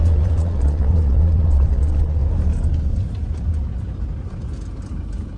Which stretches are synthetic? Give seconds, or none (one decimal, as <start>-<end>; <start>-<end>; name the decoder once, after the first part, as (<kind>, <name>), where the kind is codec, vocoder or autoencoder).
0.0-2.2 (vocoder, Vocos)